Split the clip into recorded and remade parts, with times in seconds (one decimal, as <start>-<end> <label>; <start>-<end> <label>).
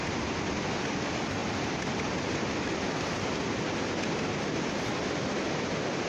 0.0-6.1 recorded